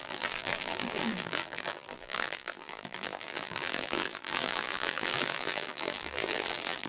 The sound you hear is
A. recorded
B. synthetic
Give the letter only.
B